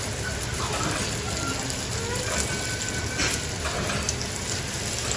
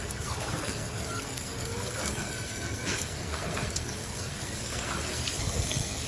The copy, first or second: second